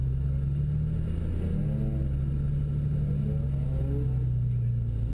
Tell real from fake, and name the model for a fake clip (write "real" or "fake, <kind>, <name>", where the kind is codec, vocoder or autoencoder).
real